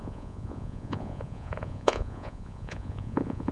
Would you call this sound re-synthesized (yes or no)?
yes